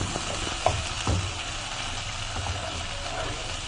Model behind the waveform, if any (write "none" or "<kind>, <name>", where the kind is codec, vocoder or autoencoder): none